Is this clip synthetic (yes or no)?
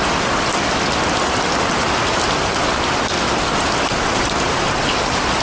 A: no